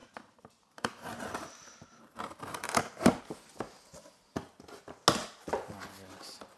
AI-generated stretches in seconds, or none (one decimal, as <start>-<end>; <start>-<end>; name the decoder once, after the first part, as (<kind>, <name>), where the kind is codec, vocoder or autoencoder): 0.0-3.2 (vocoder, BigVGAN v2)